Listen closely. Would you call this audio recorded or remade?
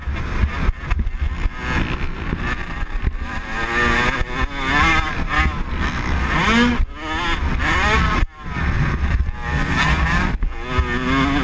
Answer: recorded